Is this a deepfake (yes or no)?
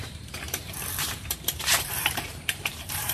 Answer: yes